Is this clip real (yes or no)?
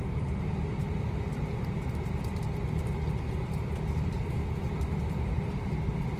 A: yes